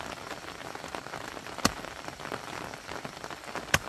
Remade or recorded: recorded